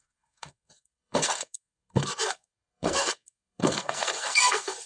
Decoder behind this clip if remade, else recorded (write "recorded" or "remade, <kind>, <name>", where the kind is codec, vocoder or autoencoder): remade, codec, SNAC